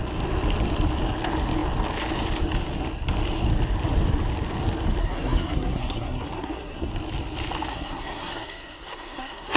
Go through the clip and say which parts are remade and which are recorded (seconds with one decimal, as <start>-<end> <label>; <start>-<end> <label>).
0.0-5.0 recorded; 5.0-6.9 remade; 6.9-7.7 recorded; 7.7-9.6 remade

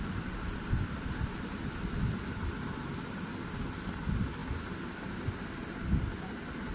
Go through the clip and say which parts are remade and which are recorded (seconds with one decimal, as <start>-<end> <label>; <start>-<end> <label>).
0.0-6.7 recorded

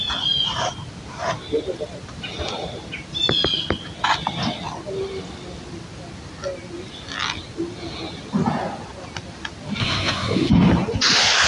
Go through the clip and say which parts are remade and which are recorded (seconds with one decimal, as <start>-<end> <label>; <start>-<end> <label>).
0.0-9.8 recorded; 9.8-10.5 remade; 10.5-11.5 recorded

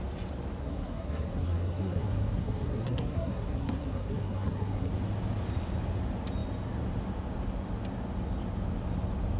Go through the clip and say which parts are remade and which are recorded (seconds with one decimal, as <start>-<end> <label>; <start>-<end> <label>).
0.0-0.6 recorded; 0.6-4.9 remade; 4.9-9.4 recorded

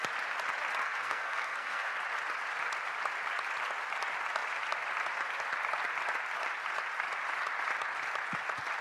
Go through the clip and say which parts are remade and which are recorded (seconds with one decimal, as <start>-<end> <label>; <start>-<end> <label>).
0.0-0.8 recorded; 0.8-1.9 remade; 1.9-8.8 recorded

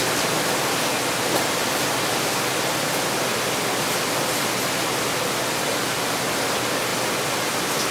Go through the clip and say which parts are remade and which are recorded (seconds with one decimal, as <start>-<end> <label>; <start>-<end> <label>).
0.0-7.9 recorded

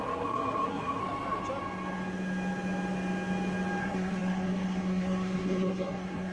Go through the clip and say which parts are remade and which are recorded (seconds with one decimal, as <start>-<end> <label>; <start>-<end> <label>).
0.0-1.0 remade; 1.0-3.8 recorded; 3.8-6.3 remade

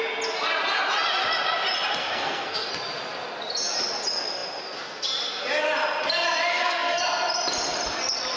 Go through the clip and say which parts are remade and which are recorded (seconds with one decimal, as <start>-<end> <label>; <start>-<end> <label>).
0.0-2.0 recorded; 2.0-2.7 remade; 2.7-6.5 recorded; 6.5-7.0 remade; 7.0-8.4 recorded